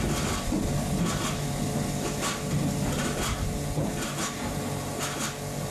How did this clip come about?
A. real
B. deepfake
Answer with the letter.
A